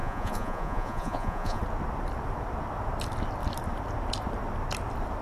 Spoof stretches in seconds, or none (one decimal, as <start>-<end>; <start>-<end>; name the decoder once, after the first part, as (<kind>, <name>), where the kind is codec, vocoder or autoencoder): 0.0-1.6 (vocoder, Vocos)